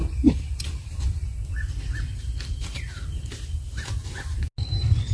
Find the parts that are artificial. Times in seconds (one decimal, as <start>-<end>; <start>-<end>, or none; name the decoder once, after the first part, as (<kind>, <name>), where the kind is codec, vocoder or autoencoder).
none